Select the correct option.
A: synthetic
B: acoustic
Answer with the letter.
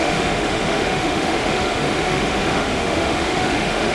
A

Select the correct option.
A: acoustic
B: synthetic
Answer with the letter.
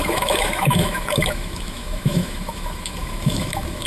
B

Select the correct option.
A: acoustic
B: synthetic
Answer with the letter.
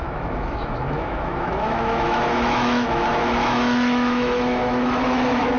B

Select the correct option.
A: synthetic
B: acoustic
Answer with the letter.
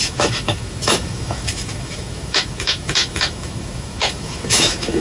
A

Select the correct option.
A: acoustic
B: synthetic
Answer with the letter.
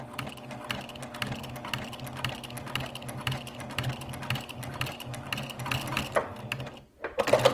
A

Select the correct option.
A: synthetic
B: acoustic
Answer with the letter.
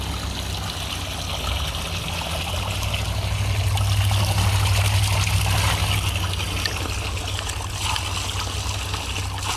B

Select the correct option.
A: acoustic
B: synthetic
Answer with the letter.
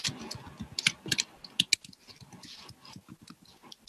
A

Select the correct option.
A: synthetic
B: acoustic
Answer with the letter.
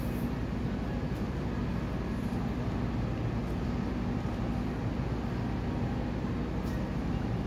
B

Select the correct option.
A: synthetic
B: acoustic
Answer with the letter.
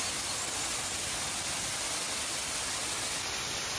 B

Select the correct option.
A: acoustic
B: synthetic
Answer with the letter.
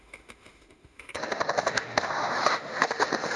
B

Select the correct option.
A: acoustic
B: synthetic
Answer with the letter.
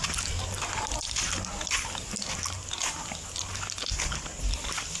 A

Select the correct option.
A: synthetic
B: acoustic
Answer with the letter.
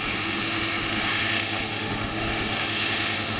A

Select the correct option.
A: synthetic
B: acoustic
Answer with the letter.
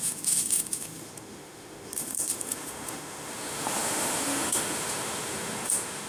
A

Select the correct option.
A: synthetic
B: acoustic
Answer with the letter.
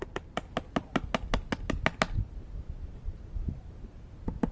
B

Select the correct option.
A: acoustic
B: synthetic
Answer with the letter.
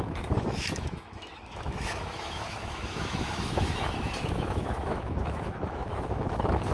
B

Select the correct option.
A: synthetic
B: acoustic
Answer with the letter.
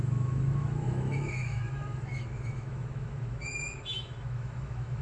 A